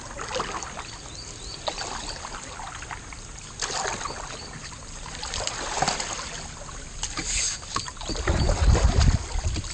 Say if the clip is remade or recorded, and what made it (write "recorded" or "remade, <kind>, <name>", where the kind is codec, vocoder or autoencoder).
recorded